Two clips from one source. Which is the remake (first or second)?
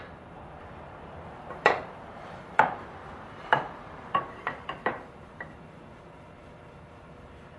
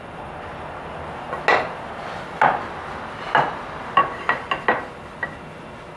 first